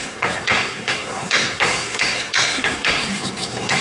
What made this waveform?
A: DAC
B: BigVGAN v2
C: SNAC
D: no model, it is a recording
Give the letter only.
C